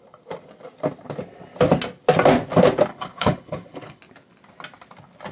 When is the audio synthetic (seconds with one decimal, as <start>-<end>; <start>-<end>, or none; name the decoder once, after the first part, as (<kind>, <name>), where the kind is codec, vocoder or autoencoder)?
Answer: 2.9-4.0 (codec, HILCodec)